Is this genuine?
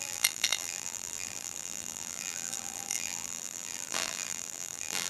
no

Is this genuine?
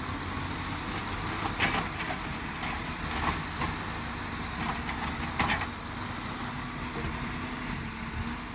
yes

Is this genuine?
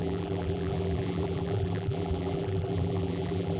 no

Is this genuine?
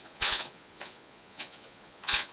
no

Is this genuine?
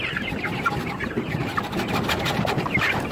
no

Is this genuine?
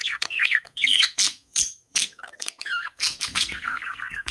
no